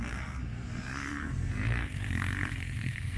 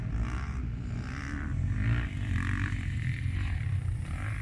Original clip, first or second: second